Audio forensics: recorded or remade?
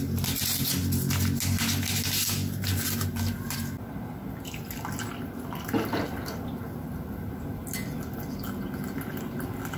recorded